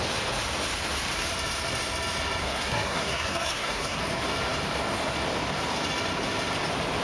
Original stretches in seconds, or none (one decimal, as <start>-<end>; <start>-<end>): 0.0-2.4; 4.0-7.0